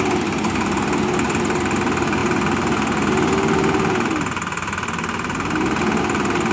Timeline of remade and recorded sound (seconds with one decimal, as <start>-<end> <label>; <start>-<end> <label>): 0.0-6.5 recorded